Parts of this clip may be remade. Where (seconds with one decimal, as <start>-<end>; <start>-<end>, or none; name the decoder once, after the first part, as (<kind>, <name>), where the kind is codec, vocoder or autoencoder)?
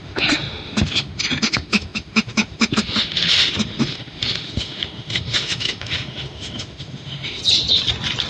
0.0-7.4 (autoencoder, DAC-VAE)